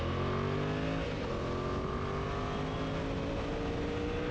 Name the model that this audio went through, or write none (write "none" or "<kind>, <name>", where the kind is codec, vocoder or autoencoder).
none